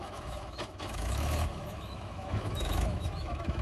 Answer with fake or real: fake